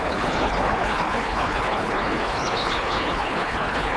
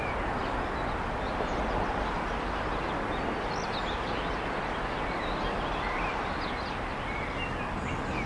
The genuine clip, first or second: second